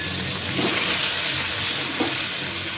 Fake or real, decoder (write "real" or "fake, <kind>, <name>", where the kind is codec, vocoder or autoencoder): real